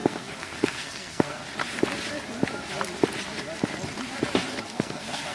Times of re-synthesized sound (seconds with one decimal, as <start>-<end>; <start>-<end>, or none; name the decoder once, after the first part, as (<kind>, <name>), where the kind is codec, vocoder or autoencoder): 0.0-1.4 (codec, SNAC); 4.6-5.3